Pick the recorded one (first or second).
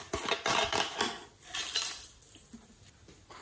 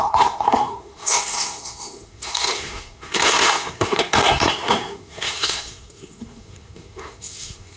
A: first